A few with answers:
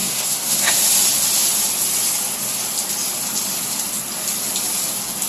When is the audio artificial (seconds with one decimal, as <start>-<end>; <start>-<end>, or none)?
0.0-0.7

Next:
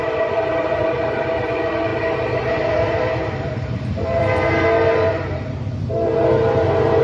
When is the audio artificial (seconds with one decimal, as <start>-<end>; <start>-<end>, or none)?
0.0-7.0

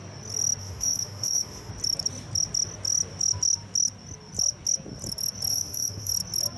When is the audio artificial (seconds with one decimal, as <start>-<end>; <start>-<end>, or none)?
0.6-1.7; 5.5-6.1

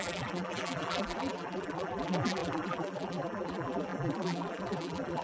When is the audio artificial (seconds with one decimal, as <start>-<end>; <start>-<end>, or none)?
0.0-5.2

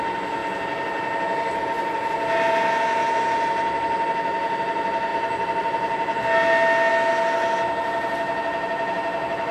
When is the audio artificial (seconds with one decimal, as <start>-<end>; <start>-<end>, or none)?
none

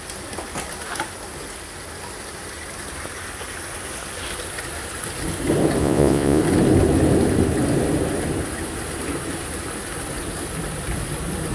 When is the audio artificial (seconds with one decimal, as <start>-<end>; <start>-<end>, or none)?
5.8-6.4